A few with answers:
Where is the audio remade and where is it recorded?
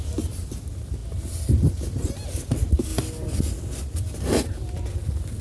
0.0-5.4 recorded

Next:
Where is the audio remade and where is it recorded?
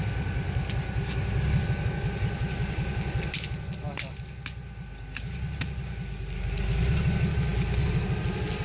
0.0-8.6 recorded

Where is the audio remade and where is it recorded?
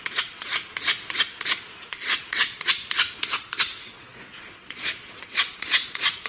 0.0-0.5 remade; 0.5-1.1 recorded; 1.1-6.3 remade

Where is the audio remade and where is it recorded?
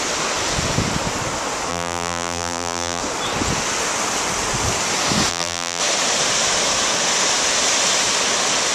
0.0-1.7 recorded; 1.7-3.0 remade; 3.0-5.3 recorded; 5.3-5.8 remade; 5.8-8.7 recorded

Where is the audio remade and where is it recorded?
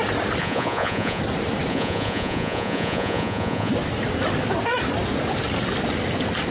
0.0-0.4 recorded; 0.4-1.2 remade; 1.2-1.7 recorded; 1.7-3.7 remade; 3.7-6.5 recorded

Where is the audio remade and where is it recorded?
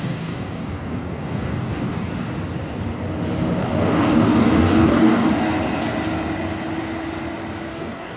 0.0-2.1 remade; 2.1-3.6 recorded; 3.6-5.2 remade; 5.2-7.7 recorded; 7.7-8.2 remade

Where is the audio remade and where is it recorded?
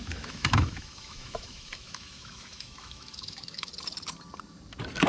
0.0-3.7 remade; 3.7-5.1 recorded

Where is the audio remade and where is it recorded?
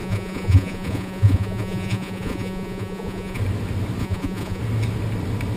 0.0-3.4 remade; 3.4-4.0 recorded; 4.0-4.6 remade; 4.6-5.6 recorded